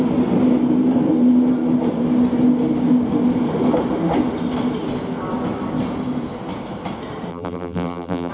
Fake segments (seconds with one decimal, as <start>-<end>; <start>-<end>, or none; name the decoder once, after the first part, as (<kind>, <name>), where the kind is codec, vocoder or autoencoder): 7.3-8.3 (vocoder, BigVGAN v2)